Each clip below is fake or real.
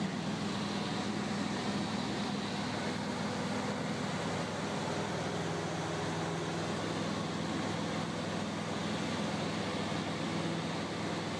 real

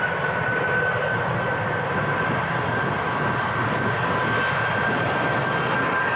real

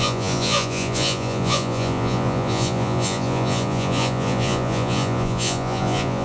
fake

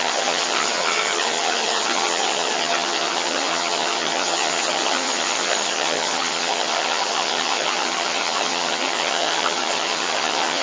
fake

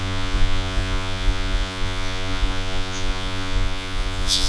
fake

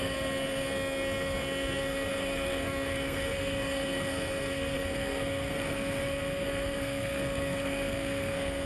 fake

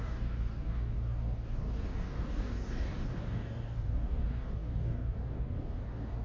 fake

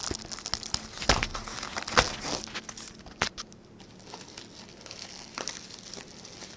real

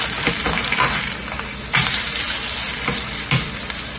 real